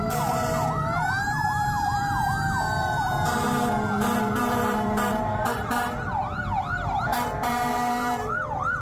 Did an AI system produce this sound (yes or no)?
yes